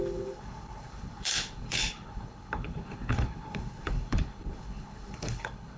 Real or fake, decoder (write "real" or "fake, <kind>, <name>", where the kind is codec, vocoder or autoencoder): fake, codec, HILCodec